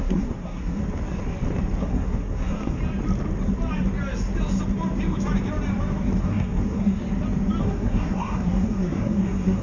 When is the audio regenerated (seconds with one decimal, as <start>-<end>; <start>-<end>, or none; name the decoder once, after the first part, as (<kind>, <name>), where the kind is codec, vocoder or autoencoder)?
0.0-0.8 (codec, SNAC); 1.8-2.8; 6.2-7.0; 7.6-9.6